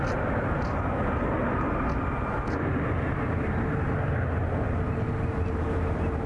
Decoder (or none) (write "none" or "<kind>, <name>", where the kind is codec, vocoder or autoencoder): none